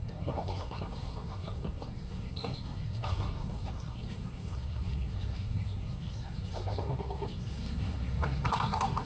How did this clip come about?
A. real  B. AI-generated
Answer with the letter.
B